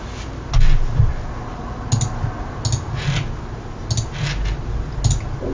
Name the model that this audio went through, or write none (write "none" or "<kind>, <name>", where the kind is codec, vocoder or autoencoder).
none